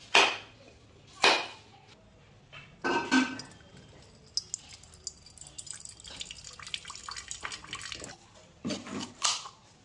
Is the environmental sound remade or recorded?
recorded